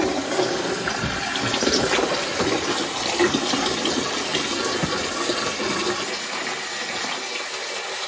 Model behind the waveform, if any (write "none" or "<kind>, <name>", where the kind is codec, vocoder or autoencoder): none